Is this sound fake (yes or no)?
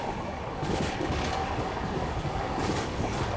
yes